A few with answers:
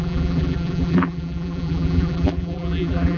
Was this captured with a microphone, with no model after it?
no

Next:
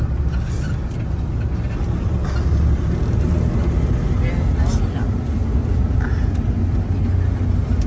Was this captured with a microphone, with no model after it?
yes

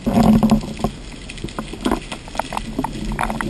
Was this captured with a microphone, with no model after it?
yes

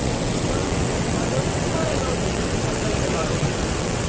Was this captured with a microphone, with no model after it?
no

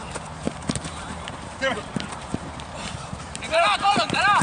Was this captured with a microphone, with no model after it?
no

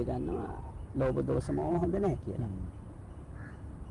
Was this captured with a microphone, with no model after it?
no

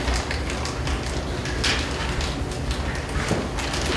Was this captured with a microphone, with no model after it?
yes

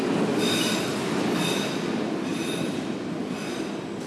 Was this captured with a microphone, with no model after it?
yes